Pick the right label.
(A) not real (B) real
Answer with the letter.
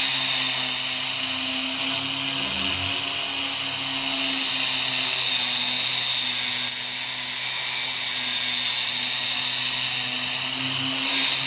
B